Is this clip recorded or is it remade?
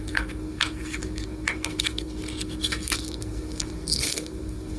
remade